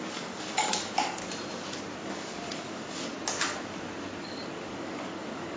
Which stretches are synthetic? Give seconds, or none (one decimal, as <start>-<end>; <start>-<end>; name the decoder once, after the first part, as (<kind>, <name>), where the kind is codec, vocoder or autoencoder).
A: 0.0-1.2 (codec, DAC); 2.0-3.1; 4.2-5.6